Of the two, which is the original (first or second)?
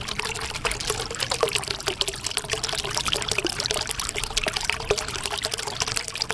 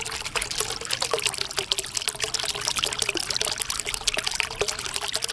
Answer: second